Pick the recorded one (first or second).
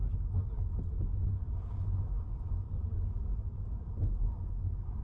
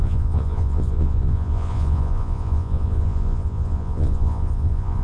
first